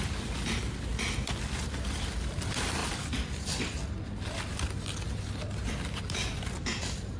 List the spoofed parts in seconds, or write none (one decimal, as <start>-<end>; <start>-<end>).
none